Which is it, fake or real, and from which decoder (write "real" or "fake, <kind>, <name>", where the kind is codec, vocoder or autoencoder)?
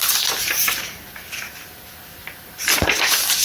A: fake, vocoder, BigVGAN v2